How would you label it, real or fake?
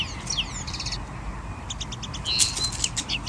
real